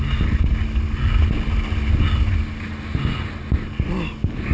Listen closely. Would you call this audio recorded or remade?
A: recorded